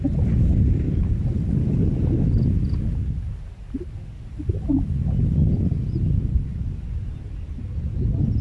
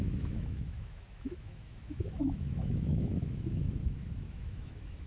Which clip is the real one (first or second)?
first